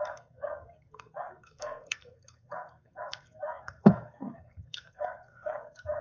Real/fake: fake